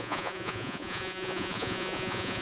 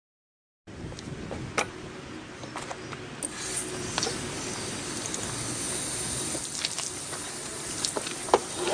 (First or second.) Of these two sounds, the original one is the second